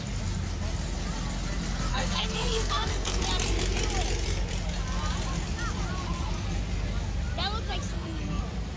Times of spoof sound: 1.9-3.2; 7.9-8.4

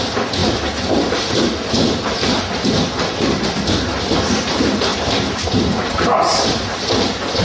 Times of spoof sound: 0.4-4.0; 4.9-6.4

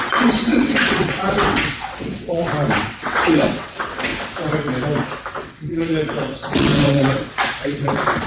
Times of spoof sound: 0.0-4.1; 5.3-8.3

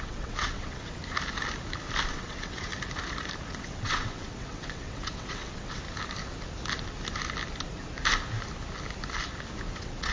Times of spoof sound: 0.0-1.0; 2.1-2.7; 3.5-5.8; 9.7-10.1

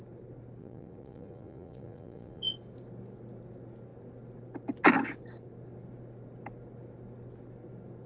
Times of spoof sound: 0.6-2.4

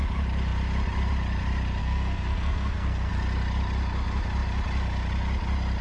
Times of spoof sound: 1.8-3.1

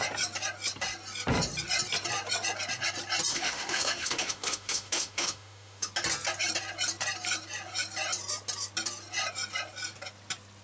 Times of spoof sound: 3.3-5.9

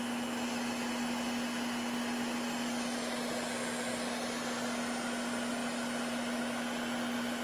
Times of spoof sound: none